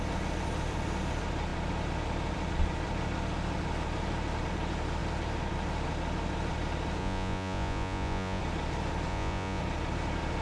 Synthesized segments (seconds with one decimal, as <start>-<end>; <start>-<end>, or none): 7.0-8.4; 9.1-9.6